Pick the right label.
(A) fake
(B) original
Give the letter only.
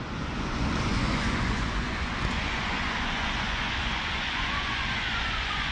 A